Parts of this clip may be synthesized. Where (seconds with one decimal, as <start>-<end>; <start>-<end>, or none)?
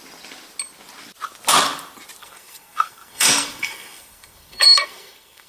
2.2-5.5